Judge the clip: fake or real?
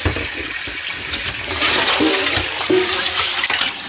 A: real